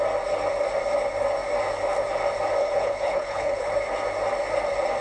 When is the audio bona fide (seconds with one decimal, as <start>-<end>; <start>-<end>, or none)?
0.0-2.6; 3.7-5.0